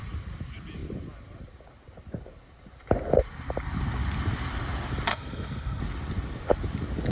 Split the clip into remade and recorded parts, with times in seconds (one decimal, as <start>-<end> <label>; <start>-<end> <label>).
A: 0.0-5.1 recorded; 5.1-5.8 remade; 5.8-7.1 recorded